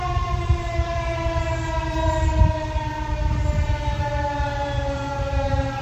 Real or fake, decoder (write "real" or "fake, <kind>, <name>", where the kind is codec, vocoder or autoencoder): fake, vocoder, BigVGAN v2